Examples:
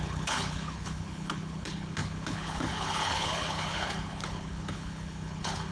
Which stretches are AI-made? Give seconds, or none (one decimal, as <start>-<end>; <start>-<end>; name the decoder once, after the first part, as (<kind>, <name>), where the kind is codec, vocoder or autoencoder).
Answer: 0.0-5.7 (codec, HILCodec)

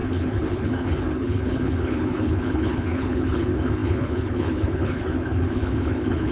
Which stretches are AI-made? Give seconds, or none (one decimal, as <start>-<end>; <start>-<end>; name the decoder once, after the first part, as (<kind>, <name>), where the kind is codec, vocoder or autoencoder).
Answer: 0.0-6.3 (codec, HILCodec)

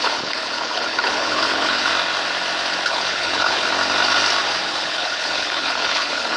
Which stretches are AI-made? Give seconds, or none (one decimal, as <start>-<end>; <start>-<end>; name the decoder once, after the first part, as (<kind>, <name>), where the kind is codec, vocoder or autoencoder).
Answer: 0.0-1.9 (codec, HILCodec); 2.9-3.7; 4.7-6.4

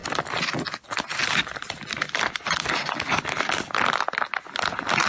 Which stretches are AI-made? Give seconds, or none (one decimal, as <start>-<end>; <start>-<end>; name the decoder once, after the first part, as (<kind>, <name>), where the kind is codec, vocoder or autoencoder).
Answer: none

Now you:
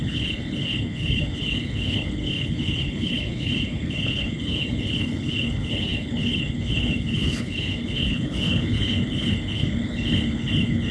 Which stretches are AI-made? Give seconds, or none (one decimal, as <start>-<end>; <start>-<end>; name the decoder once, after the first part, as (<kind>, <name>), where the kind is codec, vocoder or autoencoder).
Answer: 0.0-10.9 (codec, HILCodec)

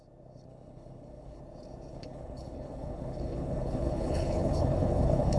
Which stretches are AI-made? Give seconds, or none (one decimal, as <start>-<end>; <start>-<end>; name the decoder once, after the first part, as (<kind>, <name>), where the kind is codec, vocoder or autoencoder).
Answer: 0.5-1.4 (codec, HILCodec); 1.9-5.4